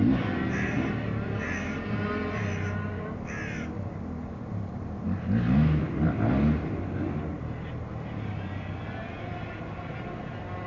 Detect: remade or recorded recorded